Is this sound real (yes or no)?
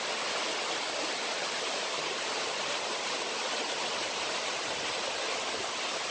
no